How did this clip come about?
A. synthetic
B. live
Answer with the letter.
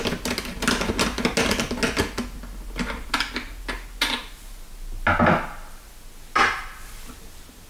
B